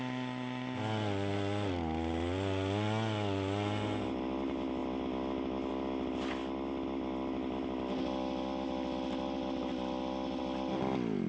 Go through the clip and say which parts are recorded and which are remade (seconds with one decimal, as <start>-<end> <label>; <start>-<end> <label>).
0.0-11.3 recorded